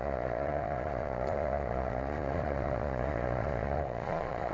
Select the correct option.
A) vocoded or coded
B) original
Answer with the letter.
A